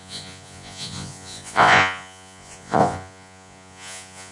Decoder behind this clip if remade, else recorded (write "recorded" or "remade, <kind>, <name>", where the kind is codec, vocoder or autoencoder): remade, vocoder, Vocos